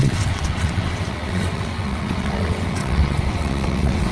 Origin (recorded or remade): remade